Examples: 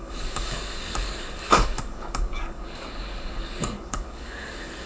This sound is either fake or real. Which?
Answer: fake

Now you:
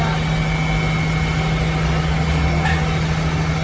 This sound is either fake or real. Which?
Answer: real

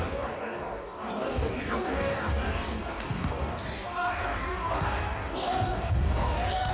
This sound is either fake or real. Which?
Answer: fake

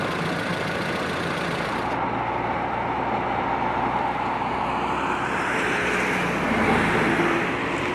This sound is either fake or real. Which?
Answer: real